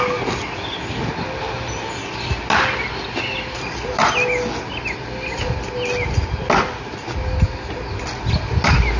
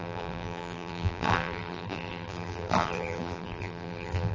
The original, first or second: first